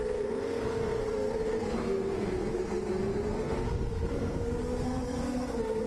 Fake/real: fake